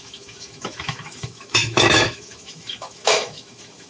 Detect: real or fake fake